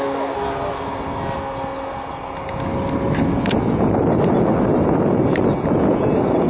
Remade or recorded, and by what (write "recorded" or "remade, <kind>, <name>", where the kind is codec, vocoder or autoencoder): recorded